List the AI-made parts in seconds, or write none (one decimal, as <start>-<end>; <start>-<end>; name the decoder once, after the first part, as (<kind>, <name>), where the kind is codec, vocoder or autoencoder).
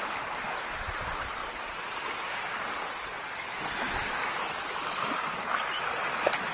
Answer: 1.4-5.3 (vocoder, BigVGAN v2)